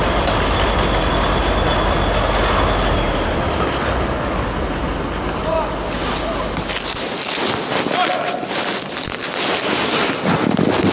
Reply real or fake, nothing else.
real